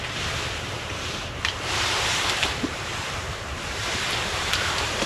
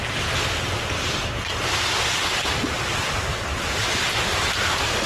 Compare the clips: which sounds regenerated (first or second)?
first